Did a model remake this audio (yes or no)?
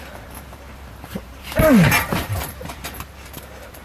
yes